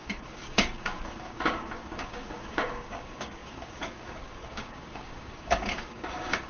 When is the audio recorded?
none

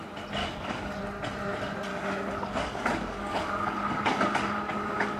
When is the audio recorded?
0.0-0.4; 1.0-1.9

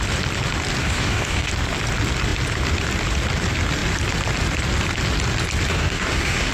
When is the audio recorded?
0.0-0.8; 1.5-5.7

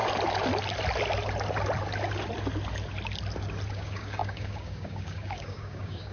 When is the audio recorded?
0.0-3.7

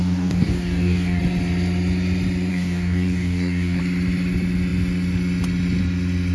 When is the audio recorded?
1.2-2.5; 3.8-6.3

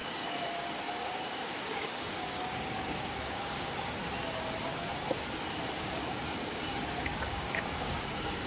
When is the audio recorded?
4.0-5.8